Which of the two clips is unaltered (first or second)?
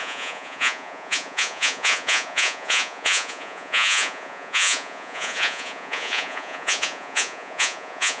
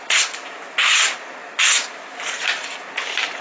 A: second